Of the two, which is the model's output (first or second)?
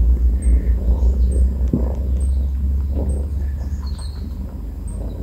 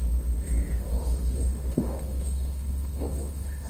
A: second